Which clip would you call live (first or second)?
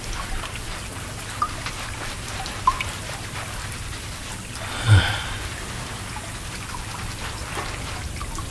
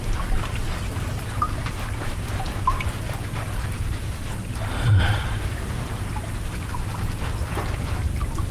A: first